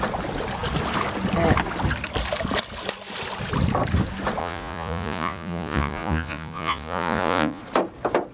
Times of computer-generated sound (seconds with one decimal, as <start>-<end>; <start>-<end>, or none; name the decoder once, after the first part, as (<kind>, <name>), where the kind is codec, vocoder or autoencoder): 4.4-7.6 (vocoder, Vocos)